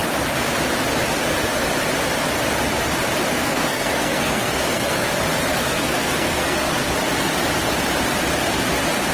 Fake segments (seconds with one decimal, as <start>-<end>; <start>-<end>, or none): 3.3-5.1; 5.5-6.9

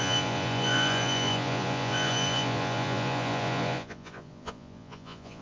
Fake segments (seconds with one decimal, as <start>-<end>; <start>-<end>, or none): 0.0-5.4

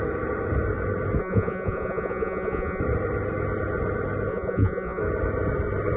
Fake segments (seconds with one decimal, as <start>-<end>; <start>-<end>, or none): 1.2-2.8; 4.3-5.0

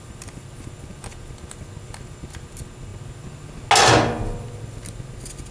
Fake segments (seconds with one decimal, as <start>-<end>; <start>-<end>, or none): none